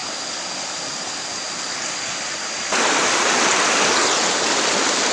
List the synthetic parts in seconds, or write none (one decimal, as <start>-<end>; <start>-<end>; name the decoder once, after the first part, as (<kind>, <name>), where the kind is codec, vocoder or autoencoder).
0.0-0.8 (vocoder, BigVGAN v2)